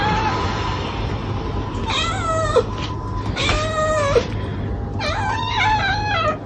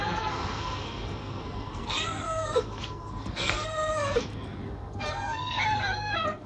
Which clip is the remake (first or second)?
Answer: second